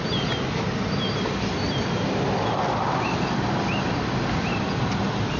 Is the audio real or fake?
real